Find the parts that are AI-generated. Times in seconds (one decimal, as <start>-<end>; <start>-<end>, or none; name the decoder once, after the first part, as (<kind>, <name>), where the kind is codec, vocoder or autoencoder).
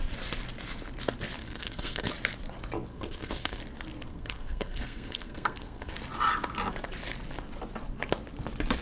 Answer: 1.4-2.1 (codec, SNAC); 2.9-3.6; 4.1-5.9